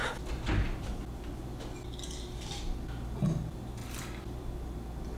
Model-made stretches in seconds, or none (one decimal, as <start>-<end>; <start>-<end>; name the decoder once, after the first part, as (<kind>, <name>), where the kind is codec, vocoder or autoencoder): 3.8-4.5 (vocoder, BigVGAN v2)